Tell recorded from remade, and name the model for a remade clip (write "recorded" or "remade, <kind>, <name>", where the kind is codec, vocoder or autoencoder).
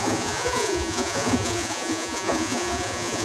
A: remade, vocoder, Vocos